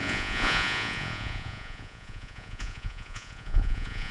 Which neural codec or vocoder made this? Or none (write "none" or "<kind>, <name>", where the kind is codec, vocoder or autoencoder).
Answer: vocoder, Vocos